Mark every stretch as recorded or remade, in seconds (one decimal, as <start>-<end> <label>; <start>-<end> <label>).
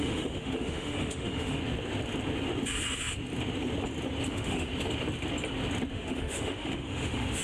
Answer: 0.0-1.6 remade; 1.6-4.3 recorded; 4.3-4.7 remade; 4.7-5.9 recorded; 5.9-7.4 remade